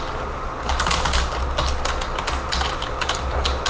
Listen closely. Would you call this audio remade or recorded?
recorded